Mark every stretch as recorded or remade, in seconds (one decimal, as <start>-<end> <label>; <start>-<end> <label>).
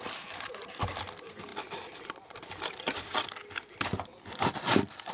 0.0-5.1 remade